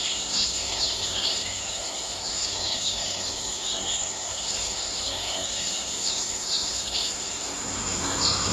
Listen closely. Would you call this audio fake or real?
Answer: fake